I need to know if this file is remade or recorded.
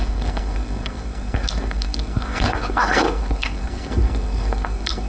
remade